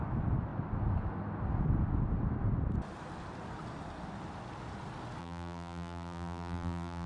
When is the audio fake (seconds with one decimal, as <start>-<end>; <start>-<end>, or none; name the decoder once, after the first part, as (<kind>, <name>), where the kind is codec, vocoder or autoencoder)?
5.2-7.1 (vocoder, BigVGAN v2)